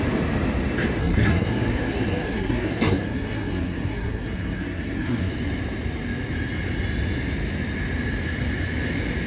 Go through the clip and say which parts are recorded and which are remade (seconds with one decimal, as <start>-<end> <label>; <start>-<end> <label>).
0.0-1.0 recorded; 1.0-5.3 remade; 5.3-9.3 recorded